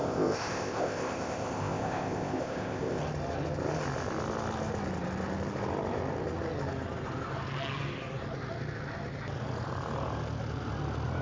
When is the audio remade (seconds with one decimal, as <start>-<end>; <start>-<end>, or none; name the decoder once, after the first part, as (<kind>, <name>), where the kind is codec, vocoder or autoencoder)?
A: 0.0-3.0 (codec, ZipCodec)